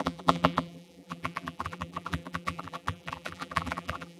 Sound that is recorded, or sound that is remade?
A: remade